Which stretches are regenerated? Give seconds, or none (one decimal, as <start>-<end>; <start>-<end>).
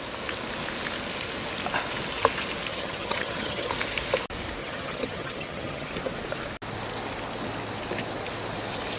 2.7-3.7; 4.6-5.9